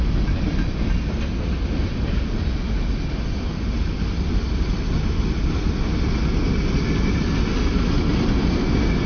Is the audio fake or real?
real